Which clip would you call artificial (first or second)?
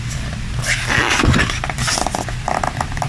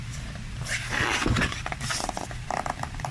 second